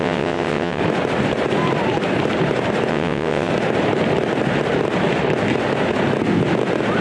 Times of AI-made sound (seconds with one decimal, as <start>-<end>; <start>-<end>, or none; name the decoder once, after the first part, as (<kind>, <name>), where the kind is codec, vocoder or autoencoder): 0.0-0.8 (vocoder, WaveNeXt); 2.9-3.5